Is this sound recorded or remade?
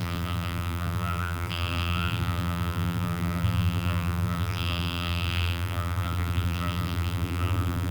remade